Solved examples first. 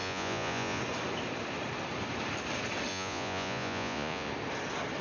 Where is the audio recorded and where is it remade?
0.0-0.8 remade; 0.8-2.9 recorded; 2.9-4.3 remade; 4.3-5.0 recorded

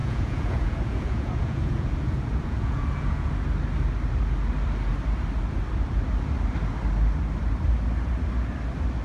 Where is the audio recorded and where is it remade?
0.0-3.3 remade; 3.3-9.0 recorded

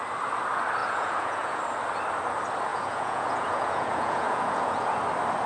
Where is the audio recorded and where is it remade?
0.0-0.8 recorded; 0.8-1.6 remade; 1.6-2.7 recorded; 2.7-5.0 remade; 5.0-5.5 recorded